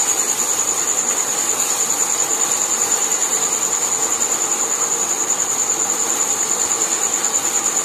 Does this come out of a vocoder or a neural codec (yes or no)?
no